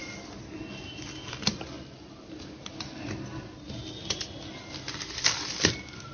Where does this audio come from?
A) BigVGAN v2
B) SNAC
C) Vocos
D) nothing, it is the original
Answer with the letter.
D